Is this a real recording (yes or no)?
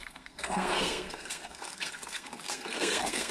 no